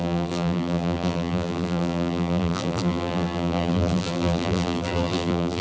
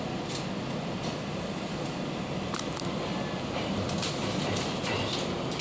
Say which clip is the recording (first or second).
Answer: second